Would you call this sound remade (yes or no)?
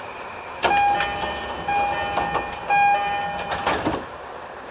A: no